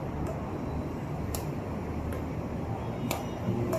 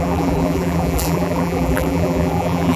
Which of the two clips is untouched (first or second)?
first